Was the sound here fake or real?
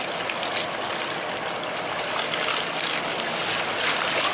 real